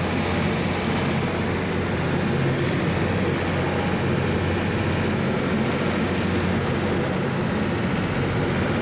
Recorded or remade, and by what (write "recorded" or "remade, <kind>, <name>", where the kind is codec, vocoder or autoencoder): recorded